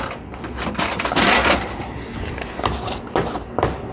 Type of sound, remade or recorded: recorded